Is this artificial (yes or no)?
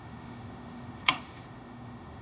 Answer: yes